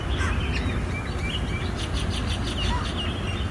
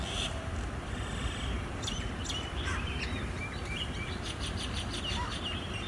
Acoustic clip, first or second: first